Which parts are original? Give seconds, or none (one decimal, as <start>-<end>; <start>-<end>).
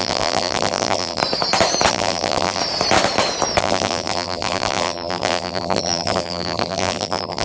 1.2-1.9; 2.6-3.6